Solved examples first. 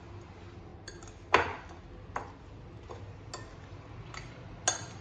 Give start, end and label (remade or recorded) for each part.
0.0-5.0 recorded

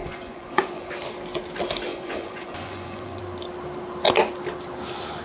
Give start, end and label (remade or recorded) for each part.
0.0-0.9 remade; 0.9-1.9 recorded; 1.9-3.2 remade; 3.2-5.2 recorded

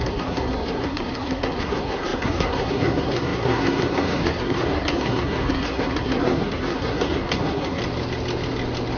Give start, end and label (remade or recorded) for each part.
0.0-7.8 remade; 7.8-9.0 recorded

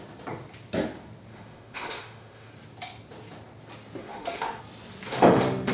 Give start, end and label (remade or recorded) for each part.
0.0-1.3 recorded; 1.3-2.5 remade; 2.5-4.0 recorded; 4.0-4.6 remade; 4.6-5.1 recorded; 5.1-5.7 remade

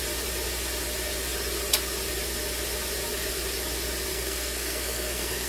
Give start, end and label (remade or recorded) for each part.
0.0-4.1 recorded; 4.1-5.5 remade

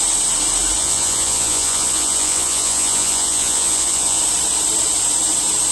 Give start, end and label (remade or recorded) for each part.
0.0-0.8 recorded; 0.8-4.2 remade; 4.2-5.7 recorded

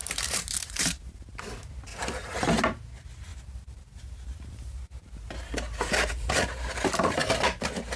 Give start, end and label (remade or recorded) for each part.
0.0-1.2 remade; 1.2-1.9 recorded; 1.9-2.6 remade; 2.6-3.3 recorded; 3.3-7.3 remade; 7.3-8.0 recorded

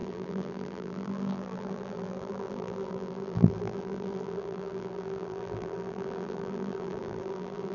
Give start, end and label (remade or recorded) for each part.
0.0-7.7 remade